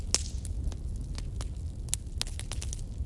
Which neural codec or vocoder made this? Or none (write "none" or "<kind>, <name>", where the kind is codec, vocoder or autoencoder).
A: none